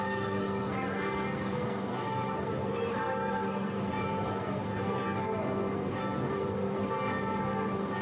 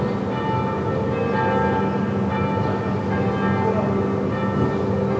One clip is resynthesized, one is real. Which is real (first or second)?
second